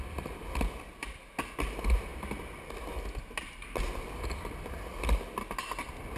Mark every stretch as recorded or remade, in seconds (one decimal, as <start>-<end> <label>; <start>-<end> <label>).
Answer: 0.0-6.2 recorded